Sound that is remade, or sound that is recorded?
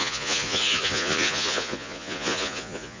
remade